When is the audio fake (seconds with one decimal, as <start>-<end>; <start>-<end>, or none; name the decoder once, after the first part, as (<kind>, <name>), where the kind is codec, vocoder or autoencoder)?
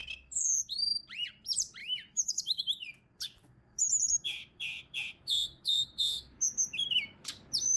1.8-2.6 (autoencoder, DAC-VAE); 3.4-6.4